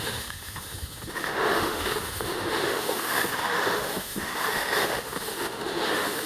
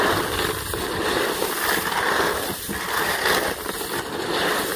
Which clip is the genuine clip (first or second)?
second